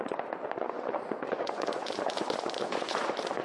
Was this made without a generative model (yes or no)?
no